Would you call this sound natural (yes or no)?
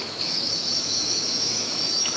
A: no